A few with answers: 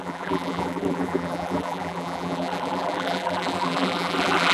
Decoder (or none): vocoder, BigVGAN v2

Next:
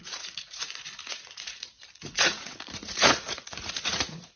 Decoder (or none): vocoder, Vocos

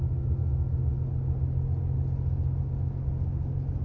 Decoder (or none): none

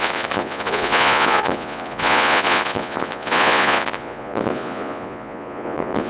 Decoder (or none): vocoder, Vocos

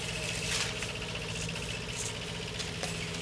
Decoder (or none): none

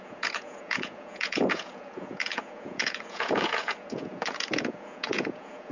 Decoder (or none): vocoder, Vocos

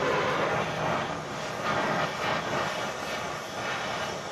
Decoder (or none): none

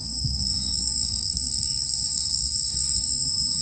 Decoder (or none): codec, SNAC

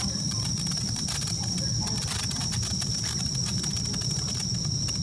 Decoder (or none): none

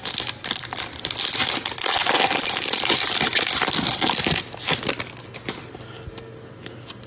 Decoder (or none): none